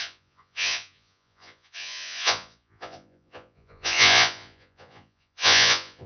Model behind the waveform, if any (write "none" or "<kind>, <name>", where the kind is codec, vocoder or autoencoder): vocoder, Vocos